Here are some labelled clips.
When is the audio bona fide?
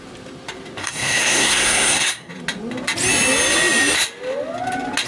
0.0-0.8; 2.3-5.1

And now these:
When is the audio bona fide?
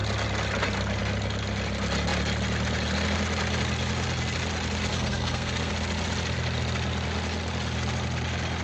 0.0-4.9; 5.7-8.6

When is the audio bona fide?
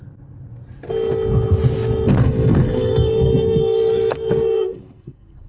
0.0-2.2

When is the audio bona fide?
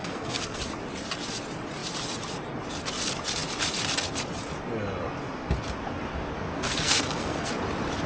0.6-6.5; 7.5-8.1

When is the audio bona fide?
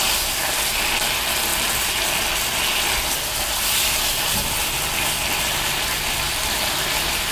0.0-7.3